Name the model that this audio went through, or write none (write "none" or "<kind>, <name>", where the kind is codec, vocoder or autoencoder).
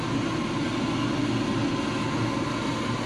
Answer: none